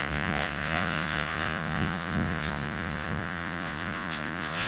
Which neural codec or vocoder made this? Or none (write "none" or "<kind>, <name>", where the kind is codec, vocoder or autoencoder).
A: vocoder, Vocos